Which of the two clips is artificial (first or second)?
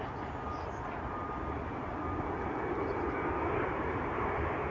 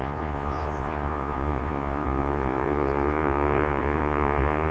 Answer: second